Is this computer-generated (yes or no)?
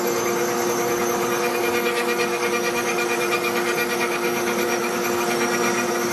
yes